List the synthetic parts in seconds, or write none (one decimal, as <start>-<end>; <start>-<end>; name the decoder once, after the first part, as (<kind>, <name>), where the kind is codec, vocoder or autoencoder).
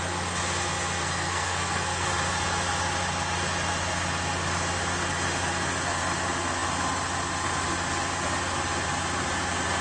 1.0-2.1 (codec, SNAC)